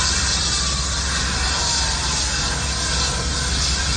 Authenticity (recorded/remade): recorded